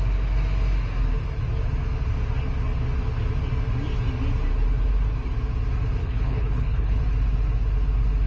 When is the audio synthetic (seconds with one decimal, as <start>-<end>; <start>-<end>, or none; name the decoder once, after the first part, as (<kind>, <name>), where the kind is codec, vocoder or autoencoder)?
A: 6.0-7.0 (codec, HILCodec)